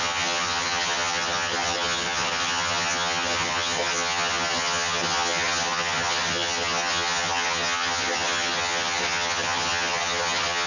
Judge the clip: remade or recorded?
remade